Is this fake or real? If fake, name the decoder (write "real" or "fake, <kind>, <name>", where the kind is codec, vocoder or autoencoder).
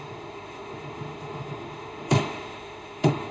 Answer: fake, autoencoder, DAC-VAE